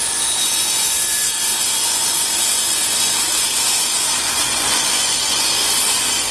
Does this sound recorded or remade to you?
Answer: remade